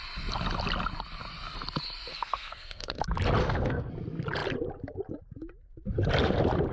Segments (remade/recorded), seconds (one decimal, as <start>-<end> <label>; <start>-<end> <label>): 0.0-2.1 recorded; 2.1-3.0 remade; 3.0-3.4 recorded; 3.4-3.9 remade; 3.9-6.7 recorded